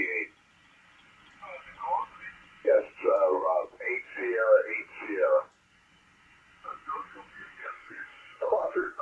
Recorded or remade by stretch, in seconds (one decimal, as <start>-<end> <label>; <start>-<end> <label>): 0.0-7.6 recorded; 7.6-9.0 remade